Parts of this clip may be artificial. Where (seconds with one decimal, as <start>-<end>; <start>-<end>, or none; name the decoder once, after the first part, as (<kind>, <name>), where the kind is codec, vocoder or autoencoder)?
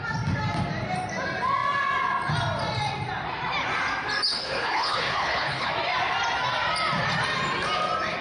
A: 4.3-5.7 (codec, HILCodec)